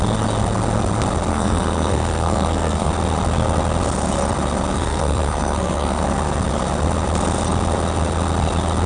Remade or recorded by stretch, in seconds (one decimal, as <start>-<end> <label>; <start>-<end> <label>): 0.0-1.3 recorded; 1.3-2.9 remade; 2.9-4.7 recorded; 4.7-6.0 remade; 6.0-8.9 recorded